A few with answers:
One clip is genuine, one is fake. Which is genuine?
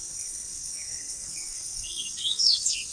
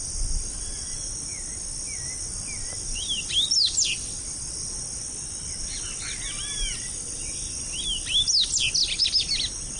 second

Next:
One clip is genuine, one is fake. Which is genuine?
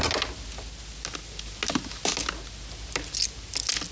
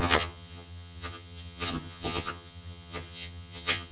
first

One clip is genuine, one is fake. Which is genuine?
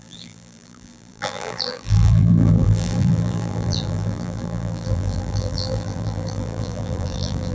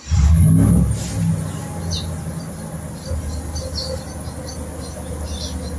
second